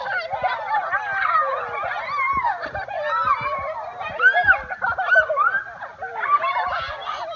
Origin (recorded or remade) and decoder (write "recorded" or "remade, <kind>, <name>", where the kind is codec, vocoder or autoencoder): recorded